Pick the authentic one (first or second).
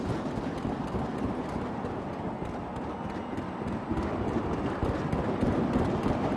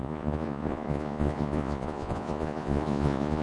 first